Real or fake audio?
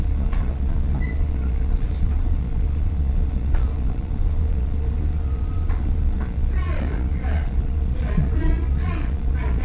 fake